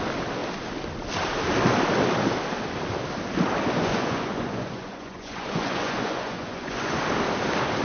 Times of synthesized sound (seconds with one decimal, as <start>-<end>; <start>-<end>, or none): 3.8-7.0